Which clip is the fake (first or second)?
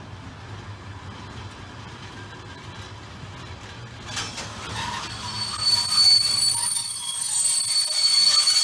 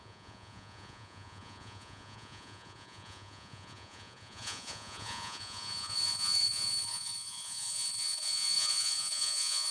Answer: second